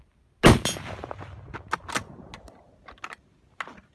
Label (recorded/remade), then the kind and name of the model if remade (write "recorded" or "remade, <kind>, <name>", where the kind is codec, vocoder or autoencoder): recorded